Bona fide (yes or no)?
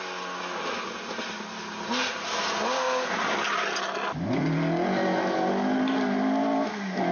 yes